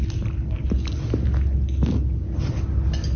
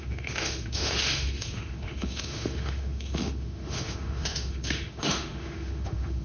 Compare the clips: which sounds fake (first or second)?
second